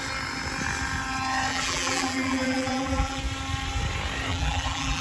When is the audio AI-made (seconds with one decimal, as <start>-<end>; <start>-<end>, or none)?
1.5-3.2; 4.3-5.0